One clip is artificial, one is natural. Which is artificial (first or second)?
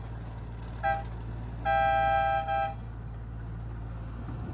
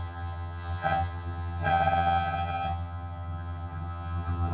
second